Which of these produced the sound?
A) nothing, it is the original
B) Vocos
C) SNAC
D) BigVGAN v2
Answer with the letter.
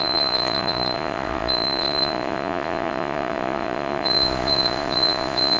B